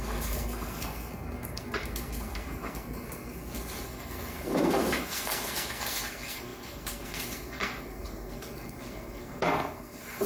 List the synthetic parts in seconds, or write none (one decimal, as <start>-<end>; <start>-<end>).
0.0-10.3